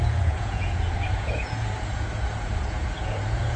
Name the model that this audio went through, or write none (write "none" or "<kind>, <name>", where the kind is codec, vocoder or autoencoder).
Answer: vocoder, Vocos